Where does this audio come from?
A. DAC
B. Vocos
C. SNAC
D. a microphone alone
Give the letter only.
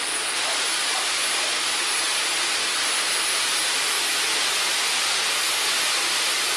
D